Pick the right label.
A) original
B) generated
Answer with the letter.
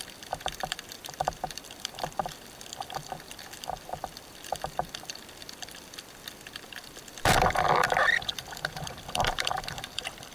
B